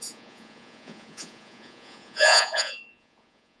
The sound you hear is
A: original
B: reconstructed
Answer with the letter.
B